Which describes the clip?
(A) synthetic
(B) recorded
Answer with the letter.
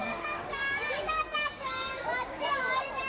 A